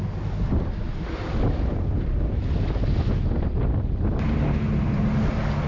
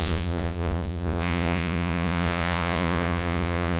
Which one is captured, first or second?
first